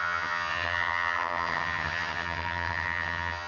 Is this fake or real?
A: fake